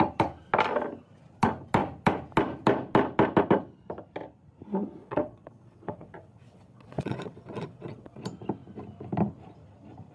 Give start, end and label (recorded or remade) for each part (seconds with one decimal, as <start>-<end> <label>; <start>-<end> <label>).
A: 0.0-5.0 recorded; 5.0-8.2 remade; 8.2-10.1 recorded

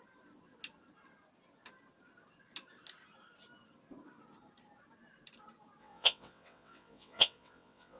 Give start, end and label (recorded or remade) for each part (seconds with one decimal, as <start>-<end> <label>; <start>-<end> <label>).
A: 0.0-5.8 recorded; 5.8-8.0 remade

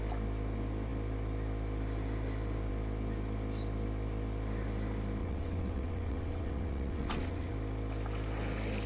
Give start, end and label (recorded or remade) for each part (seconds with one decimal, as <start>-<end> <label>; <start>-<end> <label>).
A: 0.0-5.2 recorded; 5.2-7.5 remade; 7.5-8.9 recorded

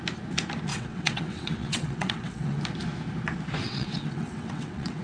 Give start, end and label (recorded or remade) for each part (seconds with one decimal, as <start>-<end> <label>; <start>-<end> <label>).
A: 0.0-0.7 recorded; 0.7-2.6 remade; 2.6-3.6 recorded; 3.6-5.0 remade

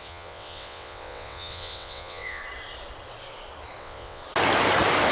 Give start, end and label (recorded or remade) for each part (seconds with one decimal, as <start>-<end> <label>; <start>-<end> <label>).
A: 0.0-2.4 remade; 2.4-3.8 recorded; 3.8-4.2 remade; 4.2-5.1 recorded

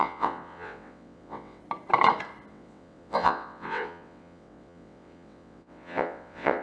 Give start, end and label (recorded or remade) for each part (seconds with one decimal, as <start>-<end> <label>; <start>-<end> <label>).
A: 0.0-1.6 remade; 1.6-2.5 recorded; 2.5-6.6 remade

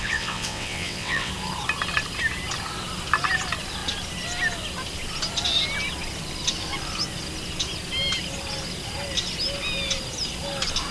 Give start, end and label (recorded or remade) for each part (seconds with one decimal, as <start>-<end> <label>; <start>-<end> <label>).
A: 0.0-1.3 remade; 1.3-10.9 recorded